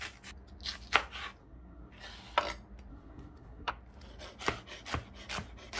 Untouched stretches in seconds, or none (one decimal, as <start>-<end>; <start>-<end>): 0.0-1.4; 1.9-2.9; 3.7-5.8